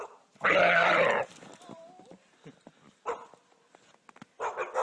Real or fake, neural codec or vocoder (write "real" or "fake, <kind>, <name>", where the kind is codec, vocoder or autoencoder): real